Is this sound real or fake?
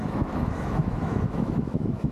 fake